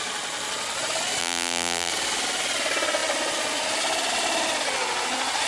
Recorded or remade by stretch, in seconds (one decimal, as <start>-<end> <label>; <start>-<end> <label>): 0.0-1.2 recorded; 1.2-1.9 remade; 1.9-5.5 recorded